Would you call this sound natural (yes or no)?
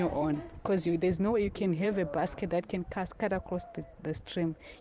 no